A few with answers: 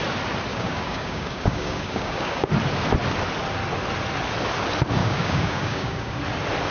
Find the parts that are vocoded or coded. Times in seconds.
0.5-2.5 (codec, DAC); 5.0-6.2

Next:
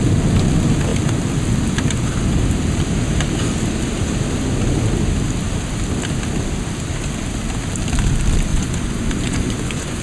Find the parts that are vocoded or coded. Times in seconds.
8.5-10.0 (vocoder, Vocos)

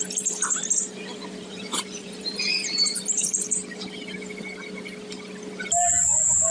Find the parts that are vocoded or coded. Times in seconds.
0.0-0.6 (vocoder, BigVGAN v2); 1.4-3.6

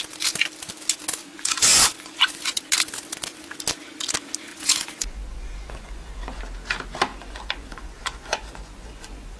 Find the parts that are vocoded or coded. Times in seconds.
1.2-2.6 (vocoder, Vocos); 4.5-6.4; 7.1-9.4

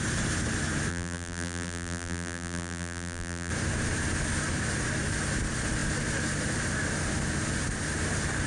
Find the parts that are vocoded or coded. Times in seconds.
0.9-3.5 (vocoder, BigVGAN v2)